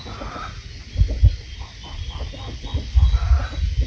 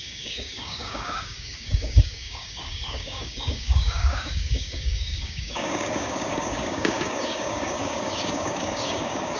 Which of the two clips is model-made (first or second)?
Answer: second